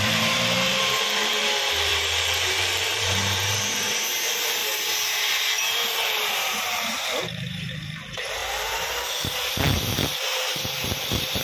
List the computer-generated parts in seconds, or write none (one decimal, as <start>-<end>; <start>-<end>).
0.0-1.9; 2.5-4.6; 5.2-11.4